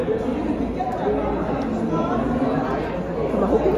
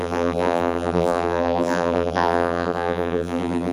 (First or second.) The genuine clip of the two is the first